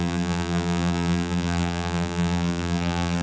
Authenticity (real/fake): fake